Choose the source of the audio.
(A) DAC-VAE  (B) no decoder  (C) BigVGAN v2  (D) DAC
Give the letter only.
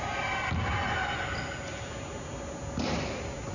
B